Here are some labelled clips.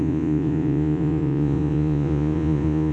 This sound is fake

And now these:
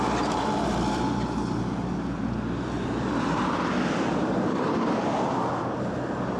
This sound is fake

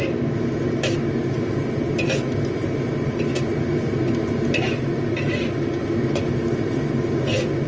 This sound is real